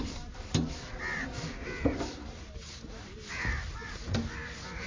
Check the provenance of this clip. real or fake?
real